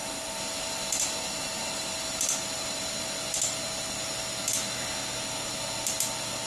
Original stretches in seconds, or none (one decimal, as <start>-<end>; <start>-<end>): 0.0-6.5